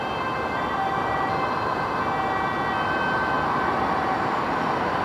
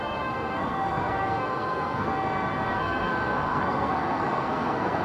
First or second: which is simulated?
second